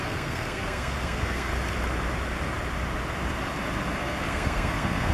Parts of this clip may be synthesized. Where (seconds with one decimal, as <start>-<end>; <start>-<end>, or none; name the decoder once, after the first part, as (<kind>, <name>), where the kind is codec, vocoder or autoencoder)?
0.0-1.5 (codec, SNAC); 4.0-5.1